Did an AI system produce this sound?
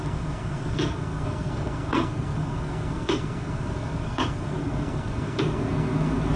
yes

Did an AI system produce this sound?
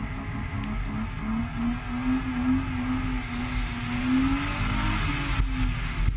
no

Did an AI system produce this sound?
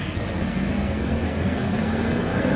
yes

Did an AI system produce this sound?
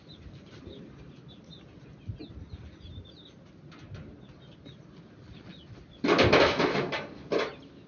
no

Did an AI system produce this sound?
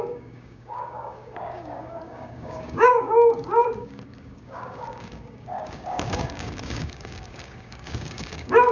yes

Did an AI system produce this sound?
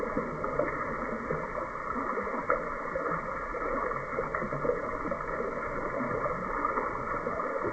no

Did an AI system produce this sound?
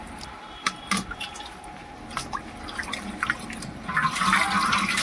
no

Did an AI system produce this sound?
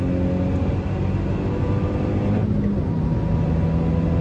no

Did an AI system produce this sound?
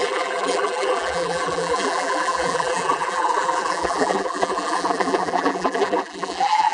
yes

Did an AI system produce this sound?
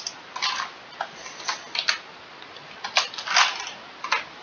no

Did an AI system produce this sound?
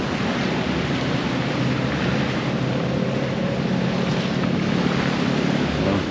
no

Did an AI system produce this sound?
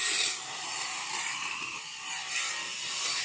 no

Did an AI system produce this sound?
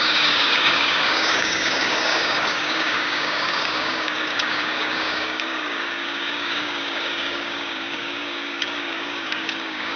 yes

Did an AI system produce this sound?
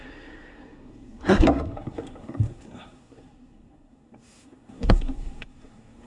yes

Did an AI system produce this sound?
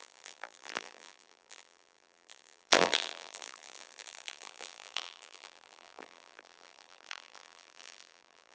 yes